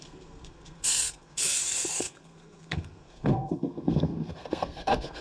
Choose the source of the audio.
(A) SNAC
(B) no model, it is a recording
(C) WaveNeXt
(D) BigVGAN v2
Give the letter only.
A